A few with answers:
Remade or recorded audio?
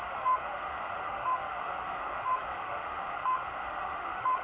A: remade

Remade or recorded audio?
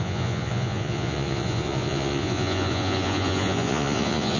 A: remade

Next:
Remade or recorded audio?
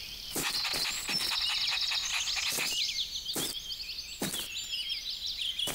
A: recorded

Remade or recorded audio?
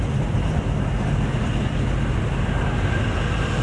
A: recorded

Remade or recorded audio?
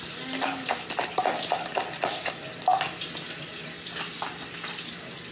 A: recorded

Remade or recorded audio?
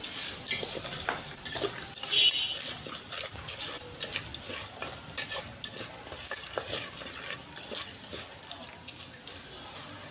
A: recorded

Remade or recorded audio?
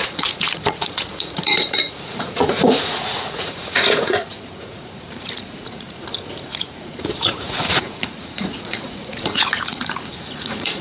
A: remade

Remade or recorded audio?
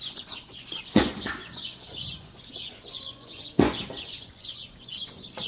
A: remade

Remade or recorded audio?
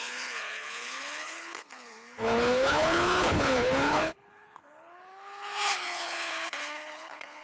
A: remade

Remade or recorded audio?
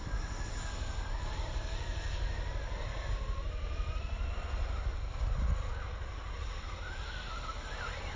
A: recorded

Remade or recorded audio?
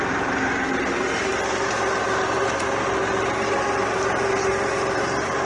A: recorded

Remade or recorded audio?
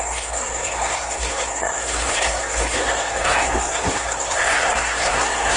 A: remade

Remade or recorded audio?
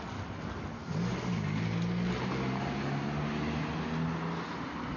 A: recorded